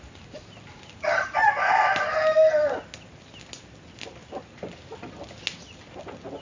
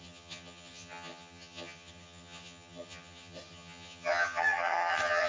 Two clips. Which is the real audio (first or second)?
first